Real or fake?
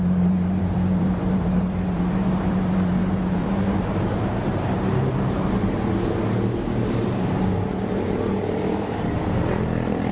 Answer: fake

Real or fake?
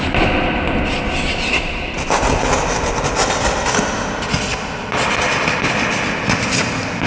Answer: fake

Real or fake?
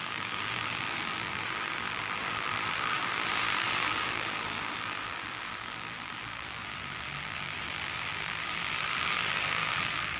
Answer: fake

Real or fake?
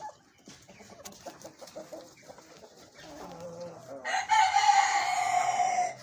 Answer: real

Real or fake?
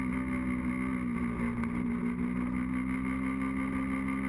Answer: real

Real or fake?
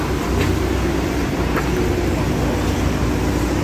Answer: real